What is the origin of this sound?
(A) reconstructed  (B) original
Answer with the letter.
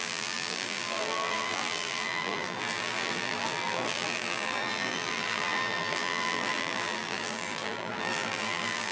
A